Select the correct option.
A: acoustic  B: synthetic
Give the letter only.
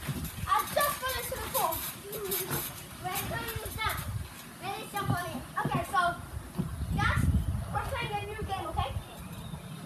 A